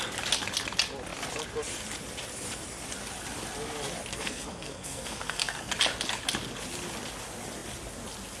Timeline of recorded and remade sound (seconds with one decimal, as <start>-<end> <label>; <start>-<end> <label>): 0.0-4.1 recorded; 4.1-5.7 remade; 5.7-8.4 recorded